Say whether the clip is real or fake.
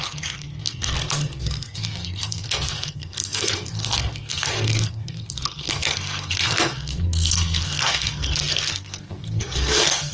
fake